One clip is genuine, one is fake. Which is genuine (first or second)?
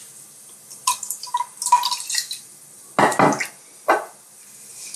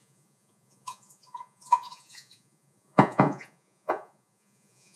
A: first